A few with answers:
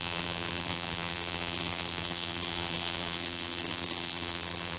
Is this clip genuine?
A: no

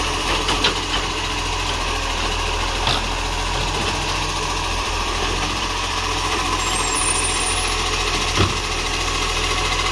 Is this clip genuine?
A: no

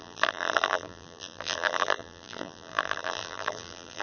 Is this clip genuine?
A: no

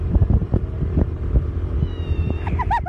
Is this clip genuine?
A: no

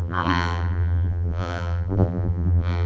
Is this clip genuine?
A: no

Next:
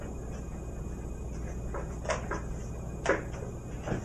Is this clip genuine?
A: yes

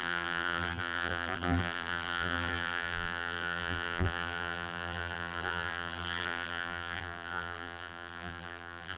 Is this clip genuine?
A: no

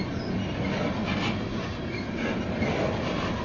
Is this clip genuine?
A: yes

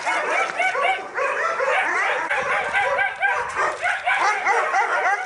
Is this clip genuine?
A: yes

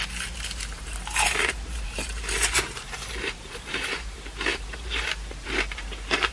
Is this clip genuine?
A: no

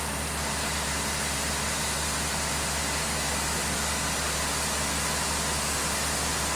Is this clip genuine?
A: yes